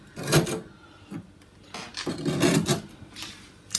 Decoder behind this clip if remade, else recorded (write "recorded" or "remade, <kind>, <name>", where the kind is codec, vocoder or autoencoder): recorded